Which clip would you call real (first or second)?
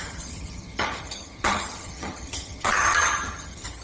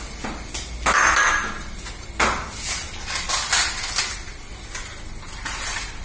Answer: second